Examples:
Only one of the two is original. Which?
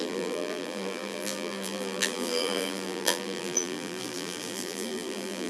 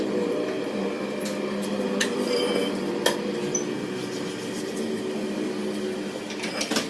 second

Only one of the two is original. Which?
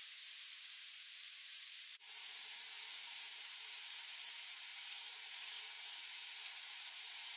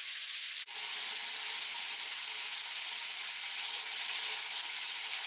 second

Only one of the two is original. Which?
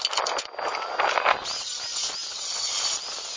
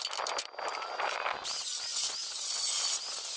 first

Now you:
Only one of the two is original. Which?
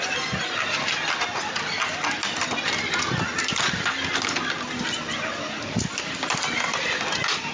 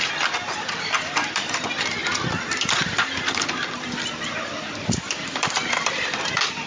first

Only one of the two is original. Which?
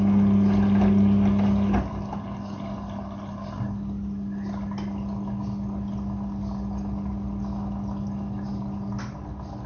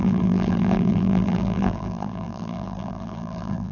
first